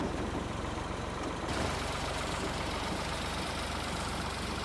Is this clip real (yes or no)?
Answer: no